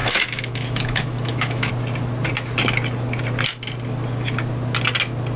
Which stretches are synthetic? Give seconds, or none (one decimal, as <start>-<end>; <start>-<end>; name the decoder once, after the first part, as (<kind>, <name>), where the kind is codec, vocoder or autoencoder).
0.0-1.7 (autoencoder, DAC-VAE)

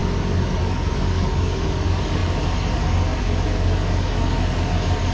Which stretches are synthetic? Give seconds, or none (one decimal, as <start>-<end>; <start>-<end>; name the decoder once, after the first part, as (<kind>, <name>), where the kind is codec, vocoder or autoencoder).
0.0-5.1 (codec, DAC)

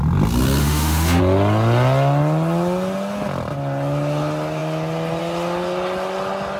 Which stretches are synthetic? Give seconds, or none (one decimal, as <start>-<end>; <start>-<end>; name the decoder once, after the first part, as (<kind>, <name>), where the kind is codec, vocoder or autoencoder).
0.6-1.2 (autoencoder, DAC-VAE)

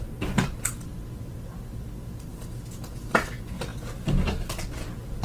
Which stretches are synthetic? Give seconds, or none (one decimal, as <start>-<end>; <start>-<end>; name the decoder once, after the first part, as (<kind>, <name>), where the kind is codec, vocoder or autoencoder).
none

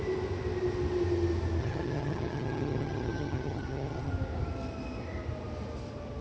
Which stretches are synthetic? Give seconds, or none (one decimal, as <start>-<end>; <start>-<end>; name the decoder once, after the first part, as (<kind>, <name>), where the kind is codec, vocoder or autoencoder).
1.6-4.1 (vocoder, HiFi-GAN)